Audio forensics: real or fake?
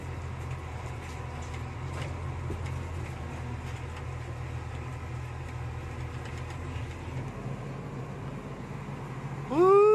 real